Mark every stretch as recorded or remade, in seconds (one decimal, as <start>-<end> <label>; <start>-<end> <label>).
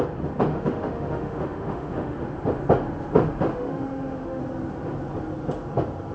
0.0-0.5 recorded; 0.5-2.2 remade; 2.2-3.5 recorded; 3.5-4.4 remade; 4.4-6.1 recorded